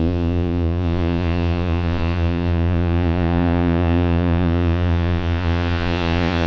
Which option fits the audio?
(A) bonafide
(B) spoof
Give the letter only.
B